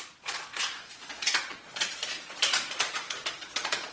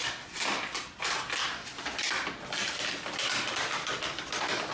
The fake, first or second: first